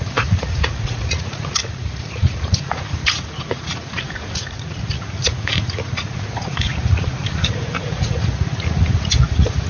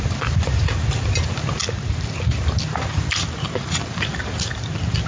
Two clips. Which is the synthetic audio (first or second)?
first